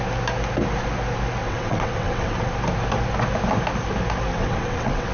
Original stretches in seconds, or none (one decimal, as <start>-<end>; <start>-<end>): 0.0-1.4; 2.5-4.3